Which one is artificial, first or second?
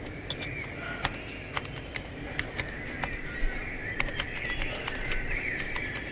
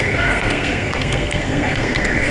second